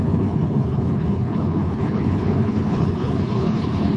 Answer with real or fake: fake